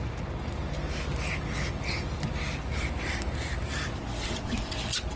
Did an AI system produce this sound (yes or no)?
no